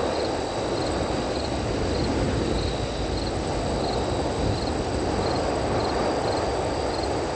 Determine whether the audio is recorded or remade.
recorded